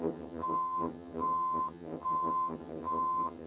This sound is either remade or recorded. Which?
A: remade